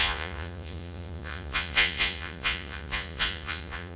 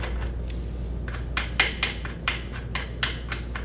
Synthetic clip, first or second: first